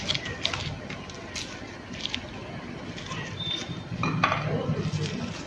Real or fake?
real